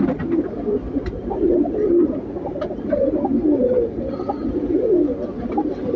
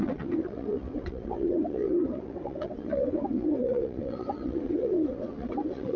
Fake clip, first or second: second